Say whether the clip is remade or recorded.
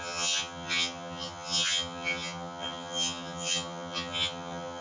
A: remade